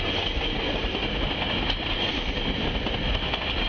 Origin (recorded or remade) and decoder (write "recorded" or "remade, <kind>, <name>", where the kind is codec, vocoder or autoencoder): recorded